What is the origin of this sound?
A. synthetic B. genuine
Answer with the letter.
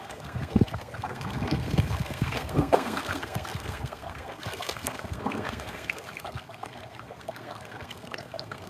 A